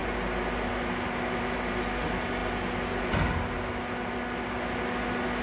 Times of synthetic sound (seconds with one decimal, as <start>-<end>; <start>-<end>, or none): none